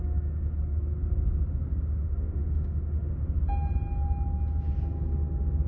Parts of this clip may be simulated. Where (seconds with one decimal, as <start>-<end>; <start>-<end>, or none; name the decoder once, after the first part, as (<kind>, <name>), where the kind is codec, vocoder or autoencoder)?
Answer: 2.0-3.1 (autoencoder, DAC-VAE)